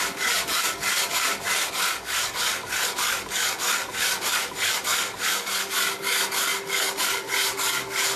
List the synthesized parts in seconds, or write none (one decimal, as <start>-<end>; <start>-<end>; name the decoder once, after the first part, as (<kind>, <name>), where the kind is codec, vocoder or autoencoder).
0.0-8.2 (codec, DAC)